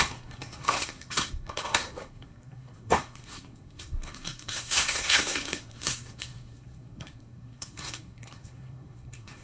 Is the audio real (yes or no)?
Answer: no